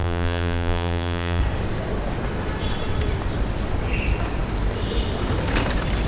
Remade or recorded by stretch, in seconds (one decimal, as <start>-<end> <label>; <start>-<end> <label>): 0.0-1.4 remade; 1.4-6.1 recorded